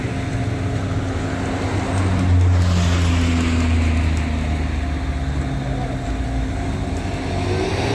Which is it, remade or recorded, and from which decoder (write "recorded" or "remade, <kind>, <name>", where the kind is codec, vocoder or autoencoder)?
recorded